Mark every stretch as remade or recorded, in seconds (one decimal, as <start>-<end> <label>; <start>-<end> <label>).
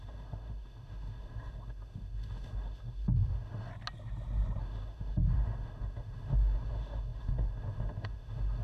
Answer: 0.0-3.7 remade; 3.7-4.6 recorded; 4.6-8.6 remade